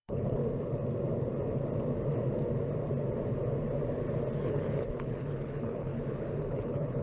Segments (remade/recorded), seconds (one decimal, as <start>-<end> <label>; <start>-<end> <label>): 0.0-0.4 remade; 0.4-4.4 recorded; 4.4-5.9 remade; 5.9-6.4 recorded; 6.4-7.0 remade